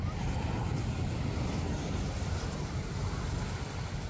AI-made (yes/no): no